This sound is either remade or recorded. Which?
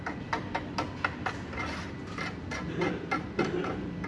recorded